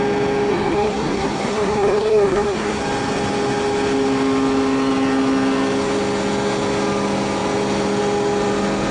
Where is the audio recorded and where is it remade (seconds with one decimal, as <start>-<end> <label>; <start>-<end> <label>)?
0.0-0.5 recorded; 0.5-2.8 remade; 2.8-8.9 recorded